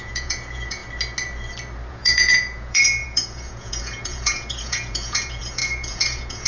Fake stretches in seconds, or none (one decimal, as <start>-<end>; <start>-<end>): 0.0-0.8; 1.9-6.5